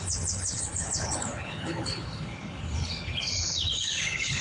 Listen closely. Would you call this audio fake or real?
fake